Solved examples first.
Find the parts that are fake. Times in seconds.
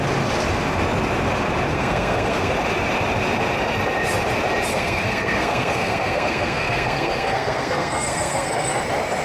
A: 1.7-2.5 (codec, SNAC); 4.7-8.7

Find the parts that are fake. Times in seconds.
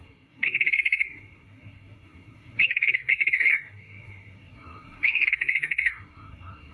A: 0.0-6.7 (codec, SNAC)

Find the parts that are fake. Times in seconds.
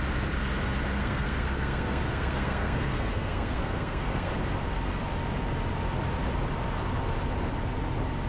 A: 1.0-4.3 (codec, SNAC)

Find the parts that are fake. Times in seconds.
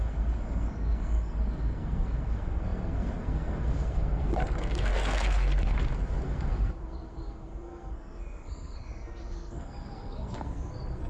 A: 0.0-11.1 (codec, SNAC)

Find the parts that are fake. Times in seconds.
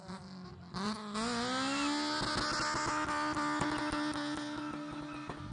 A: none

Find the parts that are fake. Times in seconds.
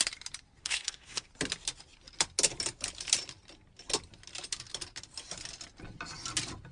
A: 0.6-1.3 (codec, SNAC)